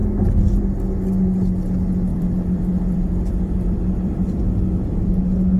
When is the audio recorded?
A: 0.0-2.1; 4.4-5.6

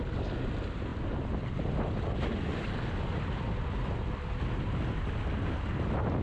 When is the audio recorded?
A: 0.0-6.2

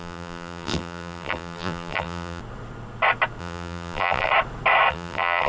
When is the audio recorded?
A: 2.4-3.4; 4.3-4.9